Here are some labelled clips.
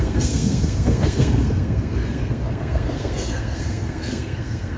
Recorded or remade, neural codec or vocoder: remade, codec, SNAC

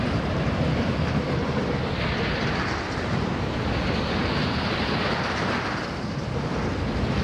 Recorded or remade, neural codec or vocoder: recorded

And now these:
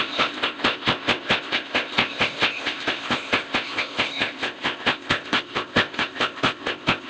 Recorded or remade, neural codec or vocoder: remade, codec, ZipCodec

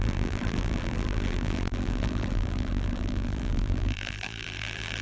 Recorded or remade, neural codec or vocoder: remade, vocoder, BigVGAN v2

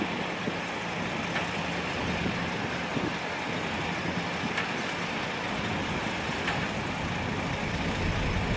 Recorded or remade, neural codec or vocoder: recorded